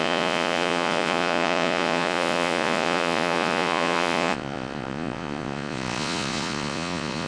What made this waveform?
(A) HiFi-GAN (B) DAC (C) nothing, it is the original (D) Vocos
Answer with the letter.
D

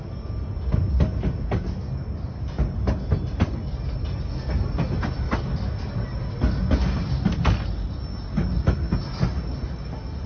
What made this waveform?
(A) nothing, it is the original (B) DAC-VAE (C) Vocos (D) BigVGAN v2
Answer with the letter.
A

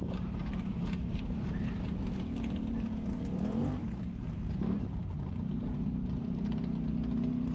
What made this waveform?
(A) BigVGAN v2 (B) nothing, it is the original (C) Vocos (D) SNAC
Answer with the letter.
A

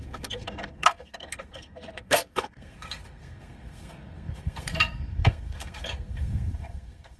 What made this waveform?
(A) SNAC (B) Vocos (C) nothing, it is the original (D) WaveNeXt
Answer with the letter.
A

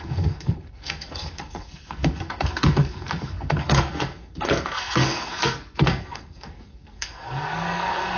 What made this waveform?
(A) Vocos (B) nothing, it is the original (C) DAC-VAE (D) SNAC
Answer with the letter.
D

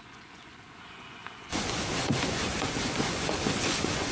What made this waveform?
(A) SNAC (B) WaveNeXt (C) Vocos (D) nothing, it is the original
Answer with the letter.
C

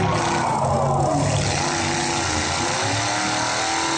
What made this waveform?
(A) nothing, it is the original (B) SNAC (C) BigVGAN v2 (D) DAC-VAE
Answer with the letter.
A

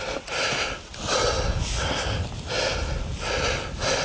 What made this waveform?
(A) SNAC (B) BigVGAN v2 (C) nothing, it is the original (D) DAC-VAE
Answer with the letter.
C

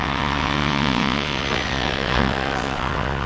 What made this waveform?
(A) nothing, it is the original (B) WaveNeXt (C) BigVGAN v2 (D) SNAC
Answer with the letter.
B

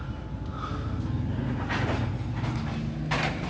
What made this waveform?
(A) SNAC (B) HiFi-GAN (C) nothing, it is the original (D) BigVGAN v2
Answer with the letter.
C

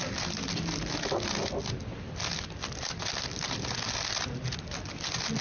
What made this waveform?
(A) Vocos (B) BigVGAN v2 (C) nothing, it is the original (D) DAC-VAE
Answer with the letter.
C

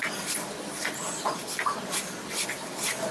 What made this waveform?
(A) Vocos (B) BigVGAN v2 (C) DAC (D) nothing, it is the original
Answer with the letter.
D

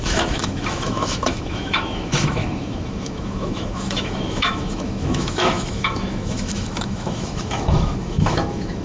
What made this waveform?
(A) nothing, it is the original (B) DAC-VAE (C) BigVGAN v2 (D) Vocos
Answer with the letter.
B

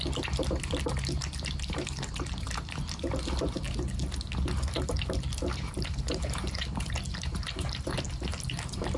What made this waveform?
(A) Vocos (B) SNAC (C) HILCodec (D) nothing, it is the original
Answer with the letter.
D